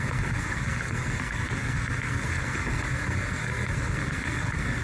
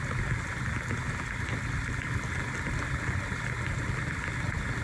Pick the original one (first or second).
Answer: second